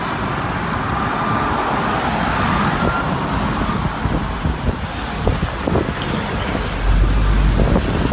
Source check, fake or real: real